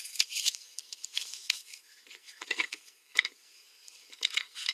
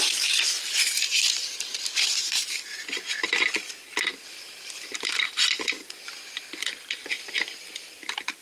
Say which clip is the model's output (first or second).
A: first